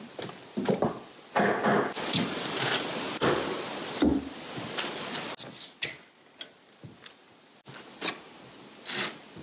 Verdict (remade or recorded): recorded